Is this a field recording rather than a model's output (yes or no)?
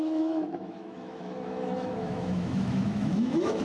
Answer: no